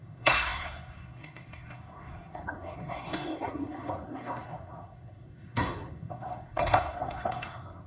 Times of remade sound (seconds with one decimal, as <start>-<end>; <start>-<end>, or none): 0.0-7.9